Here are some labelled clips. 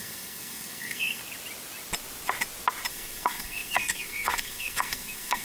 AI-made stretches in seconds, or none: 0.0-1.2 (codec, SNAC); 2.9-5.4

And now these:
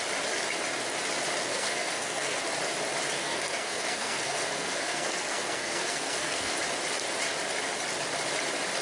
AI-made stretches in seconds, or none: 1.5-2.4 (codec, SNAC); 3.2-6.5

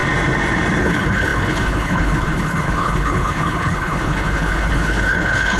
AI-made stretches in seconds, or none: 0.8-5.6 (codec, HILCodec)

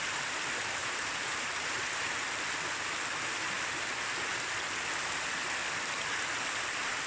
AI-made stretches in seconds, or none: 0.8-2.2 (vocoder, BigVGAN v2)